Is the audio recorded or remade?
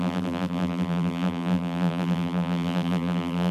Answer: remade